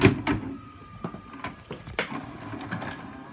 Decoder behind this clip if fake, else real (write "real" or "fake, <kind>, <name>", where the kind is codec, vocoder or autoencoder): real